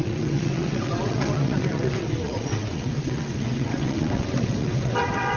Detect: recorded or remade remade